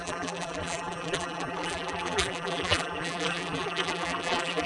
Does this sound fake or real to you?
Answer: fake